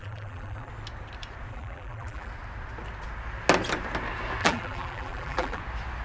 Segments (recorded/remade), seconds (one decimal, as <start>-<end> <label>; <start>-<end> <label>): 0.0-0.7 remade; 0.7-1.5 recorded; 1.5-2.3 remade; 2.3-4.4 recorded; 4.4-5.6 remade; 5.6-6.0 recorded